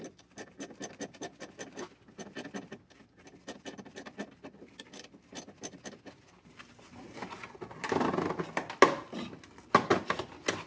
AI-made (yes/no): no